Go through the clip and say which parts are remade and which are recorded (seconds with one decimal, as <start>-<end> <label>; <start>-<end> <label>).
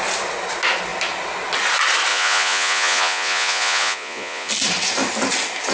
0.0-2.1 recorded; 2.1-4.5 remade; 4.5-5.7 recorded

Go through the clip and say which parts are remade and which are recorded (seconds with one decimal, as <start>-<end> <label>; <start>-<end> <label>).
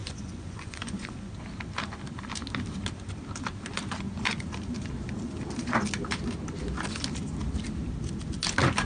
0.0-1.3 remade; 1.3-8.9 recorded